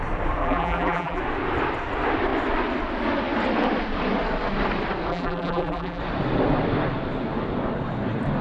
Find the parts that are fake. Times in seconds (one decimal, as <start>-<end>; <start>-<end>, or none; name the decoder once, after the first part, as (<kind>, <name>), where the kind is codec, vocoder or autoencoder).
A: 0.4-1.2 (vocoder, BigVGAN v2); 5.1-6.0